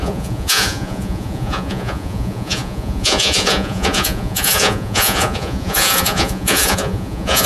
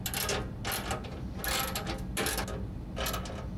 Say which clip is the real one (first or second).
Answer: second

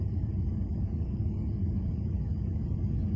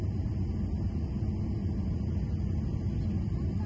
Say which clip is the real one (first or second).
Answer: second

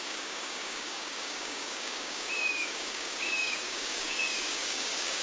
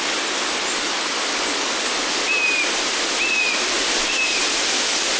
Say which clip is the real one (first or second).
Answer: second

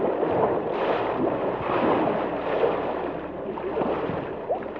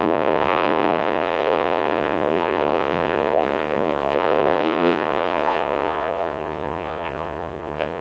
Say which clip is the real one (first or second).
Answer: first